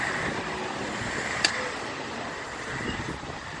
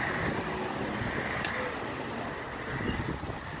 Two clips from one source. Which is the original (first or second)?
second